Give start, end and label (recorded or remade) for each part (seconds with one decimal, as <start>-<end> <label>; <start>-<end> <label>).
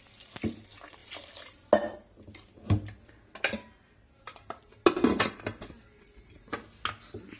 0.0-7.4 recorded